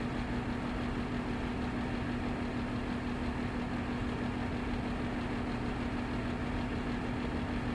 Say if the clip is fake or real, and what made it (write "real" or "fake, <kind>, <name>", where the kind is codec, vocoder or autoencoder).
real